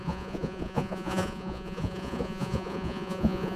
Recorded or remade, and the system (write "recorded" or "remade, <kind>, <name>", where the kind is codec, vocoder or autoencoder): remade, vocoder, Vocos